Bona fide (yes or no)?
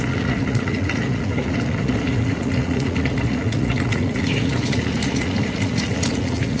no